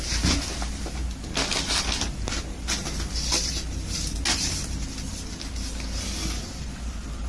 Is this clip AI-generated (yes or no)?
no